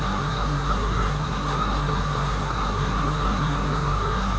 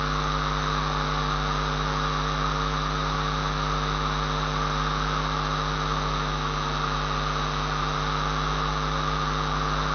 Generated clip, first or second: first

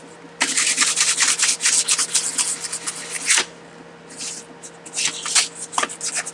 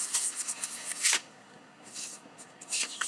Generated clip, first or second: second